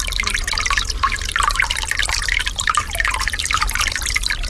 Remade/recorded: remade